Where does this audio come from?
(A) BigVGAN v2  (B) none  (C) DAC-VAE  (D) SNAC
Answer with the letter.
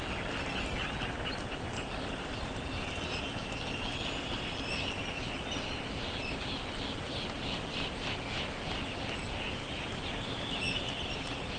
B